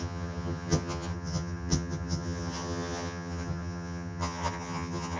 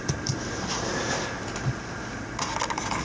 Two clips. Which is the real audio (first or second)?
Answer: second